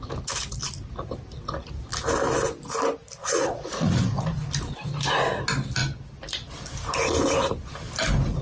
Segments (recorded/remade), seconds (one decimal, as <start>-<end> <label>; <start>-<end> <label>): 0.0-3.2 recorded; 3.2-4.0 remade; 4.0-8.4 recorded